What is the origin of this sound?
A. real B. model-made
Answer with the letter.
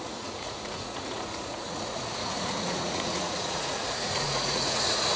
B